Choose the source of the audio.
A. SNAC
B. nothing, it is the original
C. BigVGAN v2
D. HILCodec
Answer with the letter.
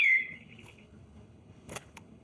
D